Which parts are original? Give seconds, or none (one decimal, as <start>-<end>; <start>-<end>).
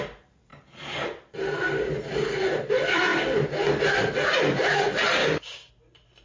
0.0-5.2; 5.7-6.2